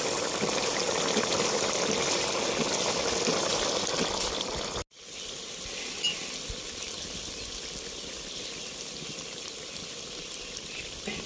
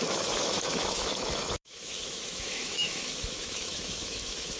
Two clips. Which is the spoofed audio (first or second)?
second